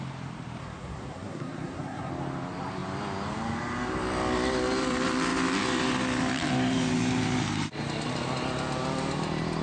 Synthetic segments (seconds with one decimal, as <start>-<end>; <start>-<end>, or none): 0.6-2.1